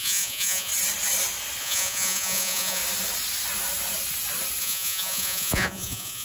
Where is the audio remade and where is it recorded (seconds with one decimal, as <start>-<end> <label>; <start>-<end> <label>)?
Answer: 0.0-0.7 remade; 0.7-1.6 recorded; 1.6-2.8 remade; 2.8-4.6 recorded; 4.6-6.2 remade